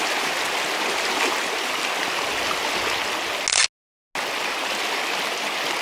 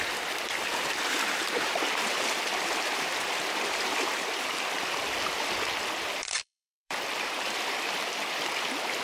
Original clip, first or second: first